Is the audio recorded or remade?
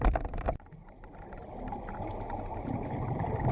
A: recorded